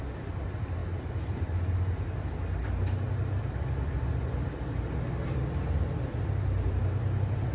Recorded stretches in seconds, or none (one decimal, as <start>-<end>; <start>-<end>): 0.0-7.5